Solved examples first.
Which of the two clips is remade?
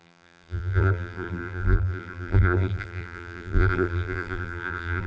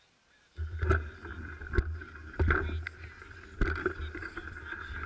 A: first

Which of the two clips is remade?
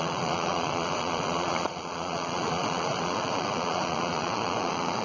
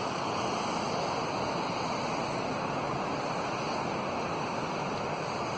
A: first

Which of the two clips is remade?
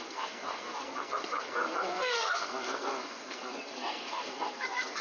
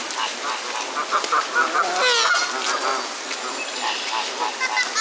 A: first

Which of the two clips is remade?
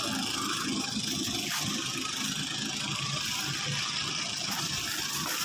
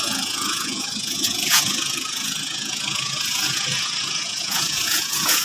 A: second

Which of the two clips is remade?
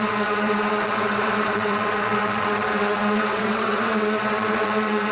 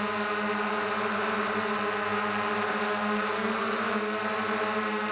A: first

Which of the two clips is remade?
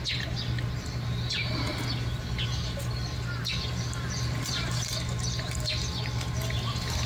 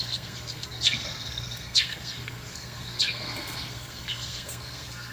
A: second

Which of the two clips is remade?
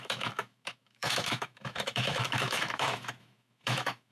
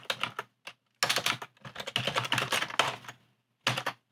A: first